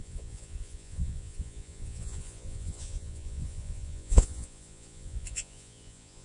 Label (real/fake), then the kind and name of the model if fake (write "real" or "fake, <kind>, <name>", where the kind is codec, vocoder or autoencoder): fake, vocoder, Vocos